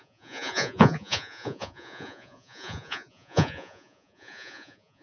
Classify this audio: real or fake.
fake